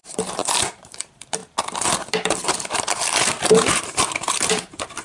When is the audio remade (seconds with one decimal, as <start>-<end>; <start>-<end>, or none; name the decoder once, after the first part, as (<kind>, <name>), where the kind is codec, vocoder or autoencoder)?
0.0-1.4 (vocoder, BigVGAN v2); 2.6-5.0